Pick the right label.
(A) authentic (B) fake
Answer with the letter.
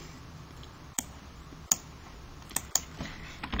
A